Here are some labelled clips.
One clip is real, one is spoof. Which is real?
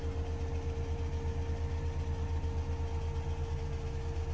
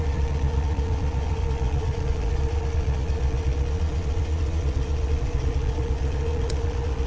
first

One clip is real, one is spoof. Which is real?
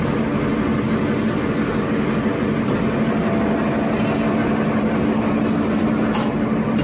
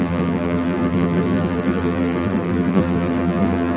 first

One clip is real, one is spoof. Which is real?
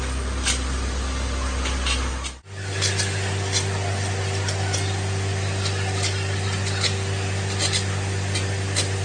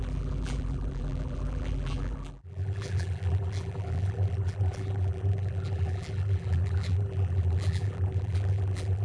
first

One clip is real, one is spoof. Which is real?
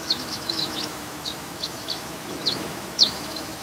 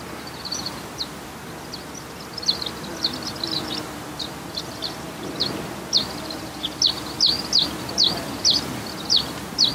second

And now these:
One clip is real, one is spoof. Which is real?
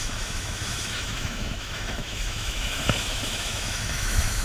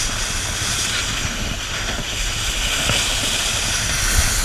second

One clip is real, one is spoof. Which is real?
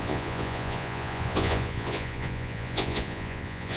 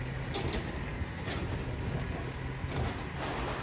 second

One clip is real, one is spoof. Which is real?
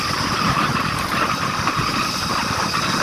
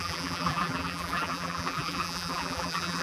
first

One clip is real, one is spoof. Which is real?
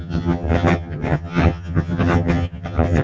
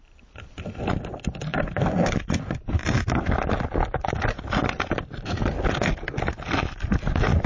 second